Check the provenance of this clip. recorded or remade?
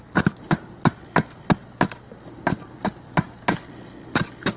recorded